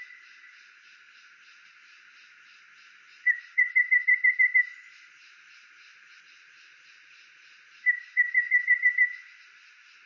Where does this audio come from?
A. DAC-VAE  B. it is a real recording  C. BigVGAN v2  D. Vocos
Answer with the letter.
B